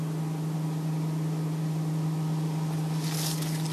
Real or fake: fake